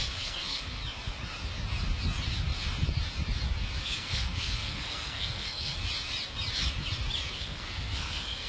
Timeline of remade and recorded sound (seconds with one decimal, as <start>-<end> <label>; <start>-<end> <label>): 0.0-0.8 remade; 0.8-3.8 recorded; 3.8-5.8 remade; 5.8-7.3 recorded; 7.3-8.5 remade